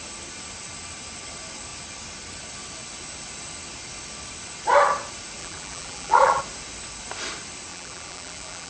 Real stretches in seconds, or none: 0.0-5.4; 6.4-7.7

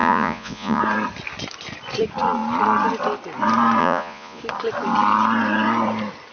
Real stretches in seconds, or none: 0.8-3.8; 4.4-6.3

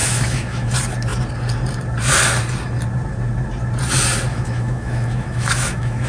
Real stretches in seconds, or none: 0.7-4.3

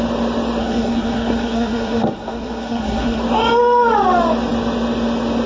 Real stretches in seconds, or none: 0.0-0.6; 3.2-5.5

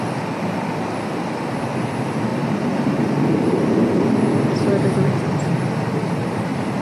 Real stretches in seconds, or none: 0.0-6.8

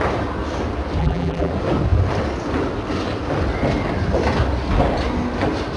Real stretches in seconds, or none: 0.0-1.0; 1.5-5.8

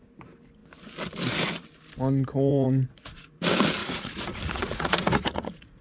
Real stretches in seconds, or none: 0.0-2.5; 3.4-3.8

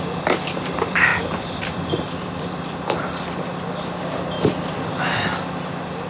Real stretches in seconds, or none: 0.0-6.1